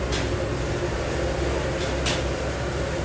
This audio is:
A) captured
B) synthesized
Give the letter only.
A